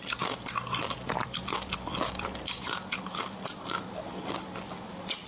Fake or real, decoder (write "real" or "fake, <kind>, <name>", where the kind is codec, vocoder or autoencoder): real